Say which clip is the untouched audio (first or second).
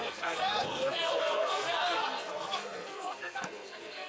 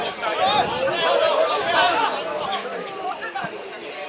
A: second